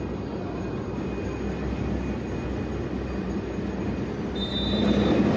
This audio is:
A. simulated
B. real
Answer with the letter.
B